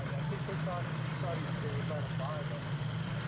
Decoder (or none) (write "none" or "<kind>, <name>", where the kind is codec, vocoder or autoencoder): none